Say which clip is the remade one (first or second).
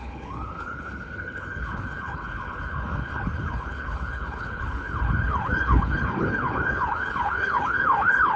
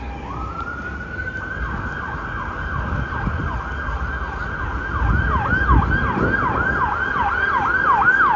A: first